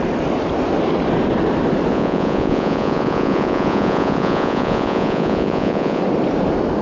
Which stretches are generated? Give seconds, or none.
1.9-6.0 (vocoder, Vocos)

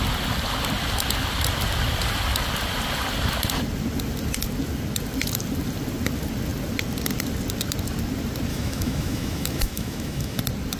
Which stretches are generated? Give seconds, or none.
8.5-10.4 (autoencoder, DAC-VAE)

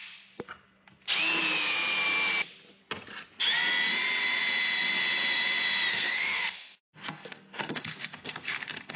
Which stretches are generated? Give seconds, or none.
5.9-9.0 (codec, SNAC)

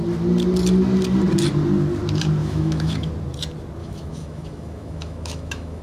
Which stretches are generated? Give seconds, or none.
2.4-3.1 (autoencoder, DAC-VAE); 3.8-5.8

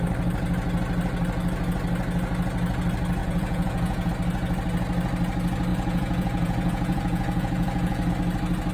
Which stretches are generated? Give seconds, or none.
3.2-4.1 (vocoder, Vocos); 5.7-8.1

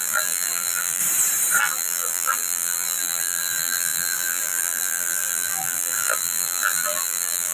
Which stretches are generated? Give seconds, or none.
0.0-1.0 (vocoder, BigVGAN v2); 1.6-7.5